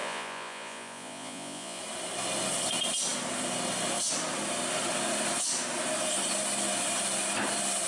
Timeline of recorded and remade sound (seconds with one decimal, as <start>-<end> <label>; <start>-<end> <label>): 0.0-1.8 remade; 1.8-7.9 recorded